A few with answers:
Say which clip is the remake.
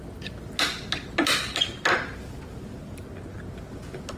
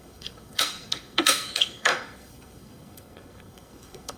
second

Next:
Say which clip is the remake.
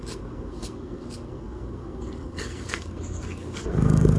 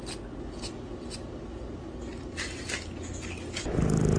first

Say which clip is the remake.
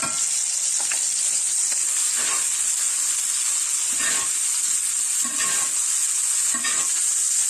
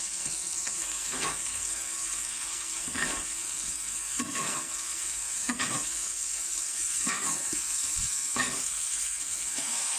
second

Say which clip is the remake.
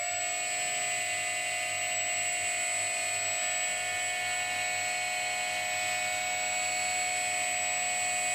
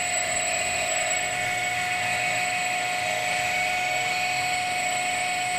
second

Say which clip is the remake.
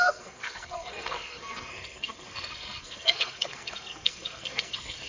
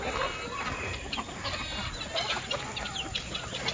first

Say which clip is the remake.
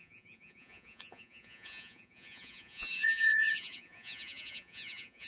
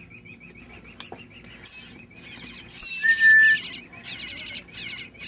first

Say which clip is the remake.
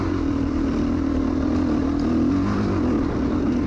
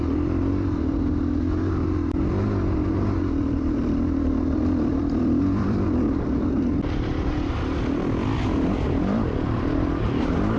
second